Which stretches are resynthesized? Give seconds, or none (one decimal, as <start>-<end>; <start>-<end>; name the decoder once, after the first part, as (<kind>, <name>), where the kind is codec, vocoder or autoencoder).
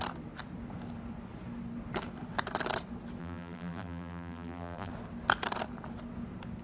3.2-4.9 (vocoder, BigVGAN v2)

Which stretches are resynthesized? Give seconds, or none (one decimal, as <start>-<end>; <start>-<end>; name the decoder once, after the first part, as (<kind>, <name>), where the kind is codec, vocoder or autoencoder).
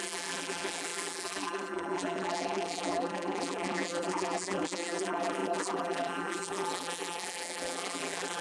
0.0-8.4 (vocoder, BigVGAN v2)